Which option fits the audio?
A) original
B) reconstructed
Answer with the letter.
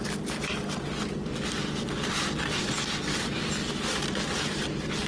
A